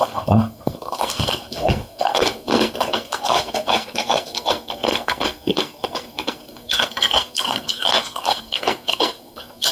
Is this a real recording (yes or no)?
no